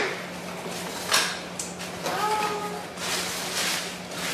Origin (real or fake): real